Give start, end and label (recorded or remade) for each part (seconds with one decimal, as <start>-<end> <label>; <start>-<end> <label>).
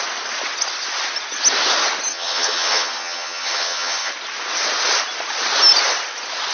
0.0-2.1 recorded; 2.1-4.1 remade; 4.1-6.5 recorded